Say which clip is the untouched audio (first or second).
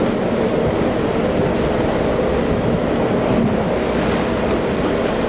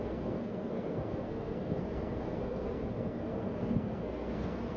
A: first